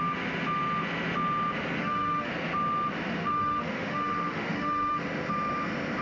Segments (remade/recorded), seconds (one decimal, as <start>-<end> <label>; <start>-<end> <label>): 0.0-1.8 recorded; 1.8-2.3 remade; 2.3-3.2 recorded; 3.2-5.0 remade; 5.0-6.0 recorded